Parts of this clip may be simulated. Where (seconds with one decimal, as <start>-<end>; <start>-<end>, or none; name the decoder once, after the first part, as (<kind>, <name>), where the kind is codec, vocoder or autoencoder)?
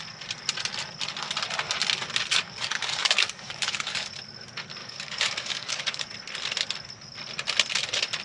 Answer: 2.3-4.1 (codec, DAC); 4.8-6.1